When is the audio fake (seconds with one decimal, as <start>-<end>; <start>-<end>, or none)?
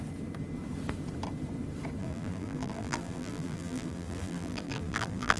2.0-5.4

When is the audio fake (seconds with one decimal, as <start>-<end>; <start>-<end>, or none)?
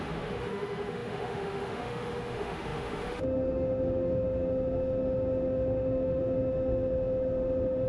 0.0-7.9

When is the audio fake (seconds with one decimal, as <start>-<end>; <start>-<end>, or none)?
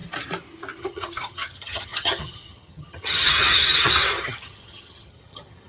0.8-5.7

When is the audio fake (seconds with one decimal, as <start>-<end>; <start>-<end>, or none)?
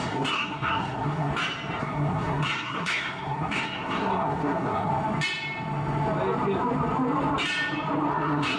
0.0-1.3; 1.8-4.9; 8.1-8.6